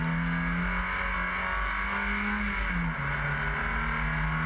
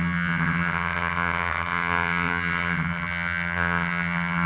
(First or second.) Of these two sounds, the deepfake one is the second